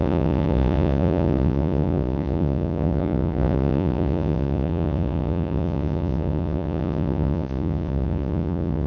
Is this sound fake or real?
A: fake